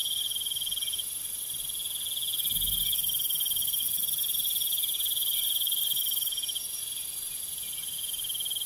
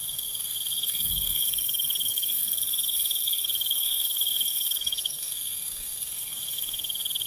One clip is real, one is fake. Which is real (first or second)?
first